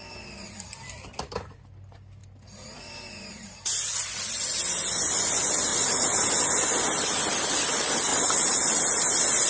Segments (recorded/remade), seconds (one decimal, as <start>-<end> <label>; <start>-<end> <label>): 0.0-2.2 recorded; 2.2-4.6 remade; 4.6-5.7 recorded; 5.7-6.4 remade; 6.4-8.1 recorded; 8.1-8.8 remade; 8.8-9.5 recorded